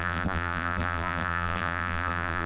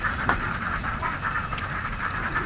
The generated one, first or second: first